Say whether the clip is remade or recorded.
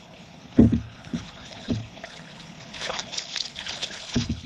remade